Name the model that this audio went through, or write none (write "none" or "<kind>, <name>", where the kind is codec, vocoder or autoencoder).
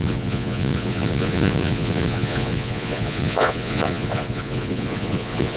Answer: vocoder, Vocos